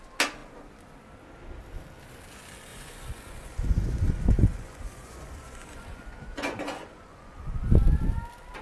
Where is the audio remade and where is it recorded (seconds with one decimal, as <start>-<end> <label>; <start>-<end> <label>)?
0.0-2.7 recorded; 2.7-7.7 remade; 7.7-8.6 recorded